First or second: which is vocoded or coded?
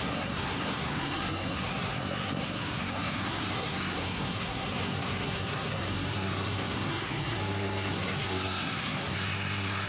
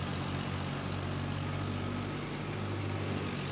first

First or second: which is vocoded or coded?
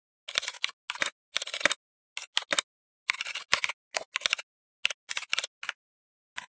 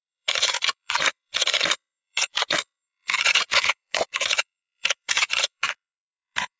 second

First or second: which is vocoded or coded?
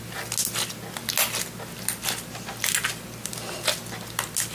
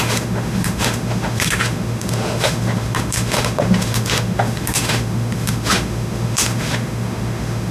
second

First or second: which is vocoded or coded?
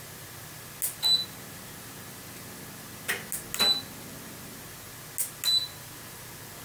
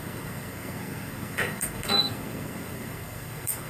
second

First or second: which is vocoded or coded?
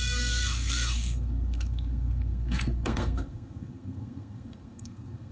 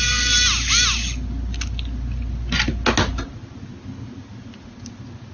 first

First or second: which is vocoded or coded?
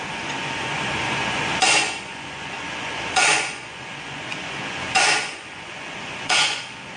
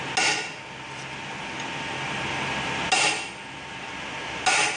first